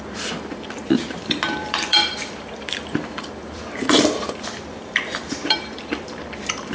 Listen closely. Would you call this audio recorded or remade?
remade